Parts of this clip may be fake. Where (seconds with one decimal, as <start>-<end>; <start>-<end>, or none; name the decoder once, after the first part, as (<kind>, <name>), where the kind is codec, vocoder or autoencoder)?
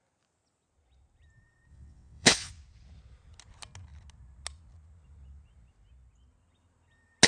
1.7-2.5 (vocoder, WaveNeXt)